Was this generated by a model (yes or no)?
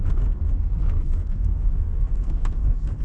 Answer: yes